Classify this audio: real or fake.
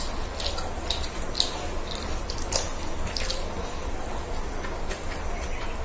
real